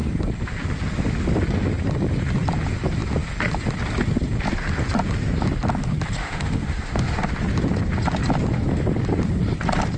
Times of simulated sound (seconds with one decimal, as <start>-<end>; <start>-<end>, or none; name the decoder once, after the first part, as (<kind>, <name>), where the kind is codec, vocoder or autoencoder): 6.2-7.3 (autoencoder, DAC-VAE)